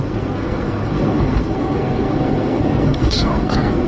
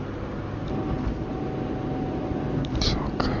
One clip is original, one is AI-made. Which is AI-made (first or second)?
first